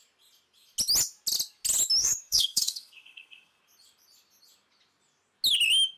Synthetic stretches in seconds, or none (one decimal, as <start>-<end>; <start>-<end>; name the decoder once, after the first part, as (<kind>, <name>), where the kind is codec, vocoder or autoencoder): 2.0-3.6 (codec, SNAC)